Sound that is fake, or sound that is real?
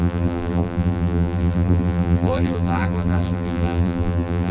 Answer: fake